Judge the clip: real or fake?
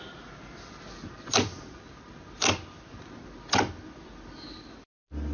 real